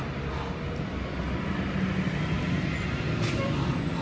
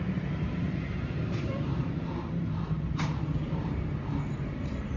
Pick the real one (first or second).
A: first